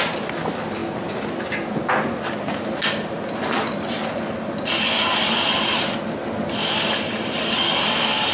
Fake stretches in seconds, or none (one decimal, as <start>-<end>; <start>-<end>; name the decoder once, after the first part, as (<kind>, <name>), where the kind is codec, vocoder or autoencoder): none